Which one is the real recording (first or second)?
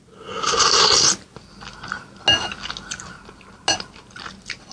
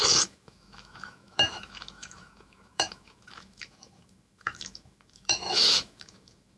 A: first